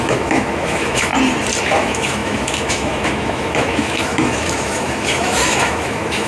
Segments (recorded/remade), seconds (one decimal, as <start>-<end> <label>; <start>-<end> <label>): 0.0-1.1 remade; 1.1-1.6 recorded; 1.6-6.3 remade